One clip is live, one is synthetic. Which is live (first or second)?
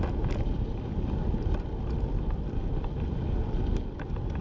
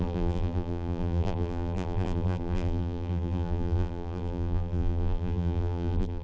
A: first